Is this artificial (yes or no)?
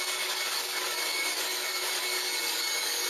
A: yes